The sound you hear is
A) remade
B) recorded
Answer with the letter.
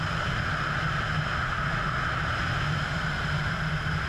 B